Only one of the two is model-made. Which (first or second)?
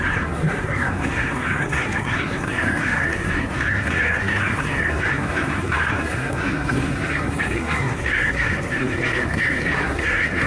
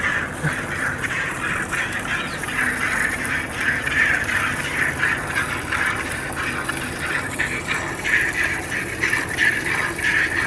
first